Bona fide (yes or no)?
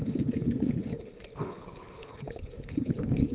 no